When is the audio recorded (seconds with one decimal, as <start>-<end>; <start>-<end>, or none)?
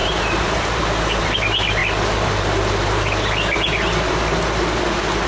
0.8-5.3